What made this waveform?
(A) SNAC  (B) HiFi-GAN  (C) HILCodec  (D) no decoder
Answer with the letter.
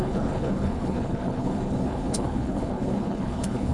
C